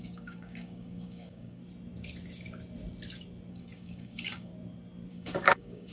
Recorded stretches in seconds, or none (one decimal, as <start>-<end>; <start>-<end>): 1.6-3.5; 4.5-5.1